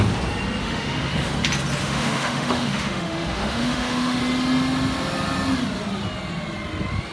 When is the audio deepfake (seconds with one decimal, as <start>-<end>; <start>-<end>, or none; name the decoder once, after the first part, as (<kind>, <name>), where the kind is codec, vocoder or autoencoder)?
0.6-1.3 (autoencoder, DAC-VAE); 1.8-4.2

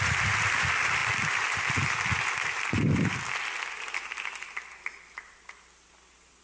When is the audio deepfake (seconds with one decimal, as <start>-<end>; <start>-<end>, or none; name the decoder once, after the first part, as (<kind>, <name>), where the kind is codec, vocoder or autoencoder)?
none

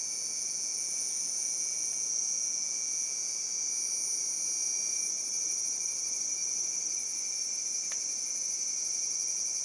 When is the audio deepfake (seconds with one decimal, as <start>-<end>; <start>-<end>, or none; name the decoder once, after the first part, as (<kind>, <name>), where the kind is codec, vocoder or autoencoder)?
0.0-3.4 (vocoder, Vocos)

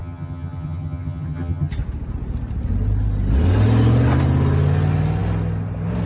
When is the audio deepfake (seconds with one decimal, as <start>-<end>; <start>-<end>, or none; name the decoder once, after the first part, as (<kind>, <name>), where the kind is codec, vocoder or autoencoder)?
0.0-1.7 (vocoder, HiFi-GAN)